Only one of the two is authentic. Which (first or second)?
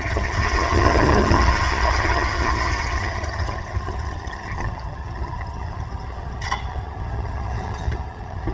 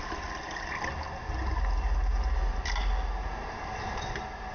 second